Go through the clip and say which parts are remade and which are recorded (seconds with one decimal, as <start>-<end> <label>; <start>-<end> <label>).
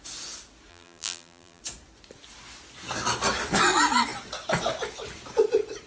0.0-0.7 recorded; 0.7-1.6 remade; 1.6-5.9 recorded